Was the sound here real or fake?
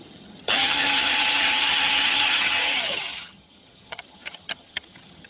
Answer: fake